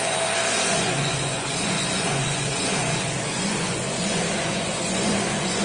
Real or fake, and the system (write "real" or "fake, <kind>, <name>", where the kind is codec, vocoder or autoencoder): fake, vocoder, Vocos